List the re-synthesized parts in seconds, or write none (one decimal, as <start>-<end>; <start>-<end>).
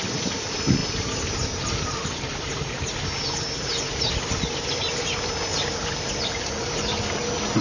none